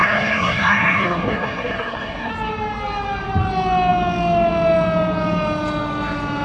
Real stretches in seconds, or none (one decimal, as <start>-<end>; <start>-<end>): 2.3-6.4